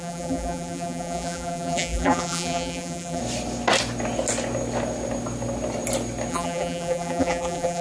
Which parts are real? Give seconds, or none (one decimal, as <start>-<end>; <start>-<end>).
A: 3.2-6.3